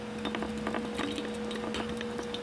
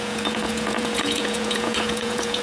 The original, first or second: first